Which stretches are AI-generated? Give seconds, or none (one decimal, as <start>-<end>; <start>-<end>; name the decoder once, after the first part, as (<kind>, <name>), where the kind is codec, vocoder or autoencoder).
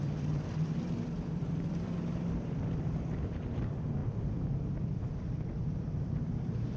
0.0-6.8 (vocoder, BigVGAN v2)